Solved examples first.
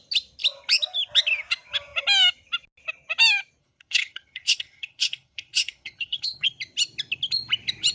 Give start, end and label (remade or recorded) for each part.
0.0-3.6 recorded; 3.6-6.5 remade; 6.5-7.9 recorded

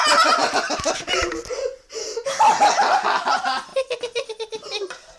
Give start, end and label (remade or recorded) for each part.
0.0-5.2 recorded

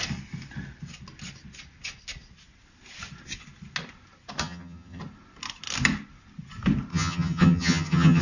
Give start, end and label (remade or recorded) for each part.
0.0-4.4 recorded; 4.4-5.0 remade; 5.0-6.9 recorded; 6.9-8.2 remade